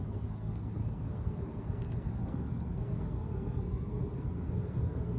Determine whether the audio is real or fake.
fake